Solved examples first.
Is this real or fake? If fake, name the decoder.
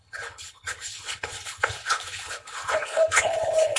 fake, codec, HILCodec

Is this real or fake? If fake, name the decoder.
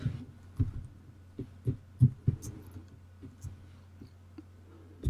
real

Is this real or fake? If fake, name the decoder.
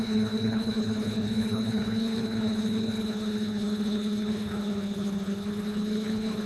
fake, codec, HILCodec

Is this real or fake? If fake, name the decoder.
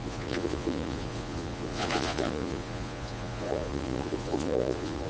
fake, vocoder, Vocos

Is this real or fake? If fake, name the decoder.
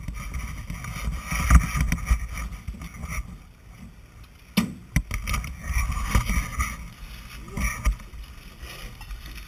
real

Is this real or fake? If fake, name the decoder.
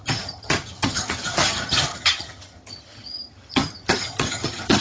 fake, vocoder, HiFi-GAN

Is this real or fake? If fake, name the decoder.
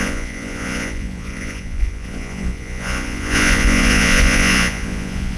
fake, vocoder, Vocos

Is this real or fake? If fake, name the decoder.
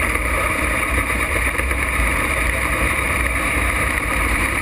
fake, vocoder, BigVGAN v2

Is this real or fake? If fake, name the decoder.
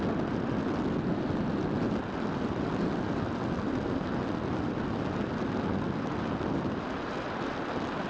real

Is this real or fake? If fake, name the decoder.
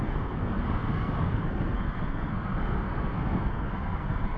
fake, codec, SNAC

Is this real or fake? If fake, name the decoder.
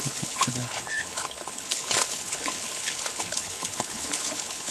fake, codec, HILCodec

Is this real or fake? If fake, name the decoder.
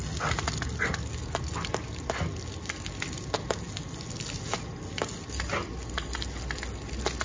real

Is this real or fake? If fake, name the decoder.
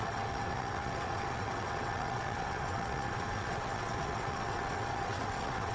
fake, vocoder, WaveNeXt